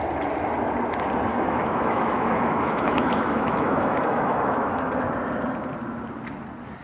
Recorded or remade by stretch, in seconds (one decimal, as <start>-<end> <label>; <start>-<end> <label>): 0.0-1.3 recorded; 1.3-4.9 remade; 4.9-6.8 recorded

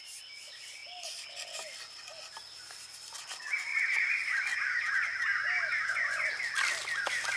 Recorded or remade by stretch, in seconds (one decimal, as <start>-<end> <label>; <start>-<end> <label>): 0.0-3.7 recorded; 3.7-4.8 remade; 4.8-7.4 recorded

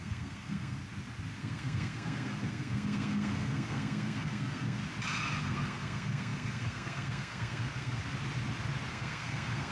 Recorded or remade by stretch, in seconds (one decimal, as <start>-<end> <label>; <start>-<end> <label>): 0.0-0.8 remade; 0.8-1.4 recorded; 1.4-4.8 remade; 4.8-5.4 recorded; 5.4-8.0 remade; 8.0-8.9 recorded; 8.9-9.7 remade

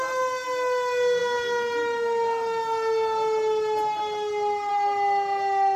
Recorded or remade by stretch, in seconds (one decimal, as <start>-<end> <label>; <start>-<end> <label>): 0.0-5.8 recorded

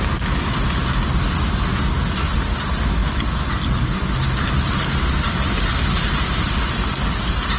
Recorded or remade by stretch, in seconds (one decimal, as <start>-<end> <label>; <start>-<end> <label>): 0.0-7.6 recorded